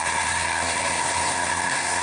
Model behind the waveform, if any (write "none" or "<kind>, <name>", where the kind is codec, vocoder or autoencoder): codec, SNAC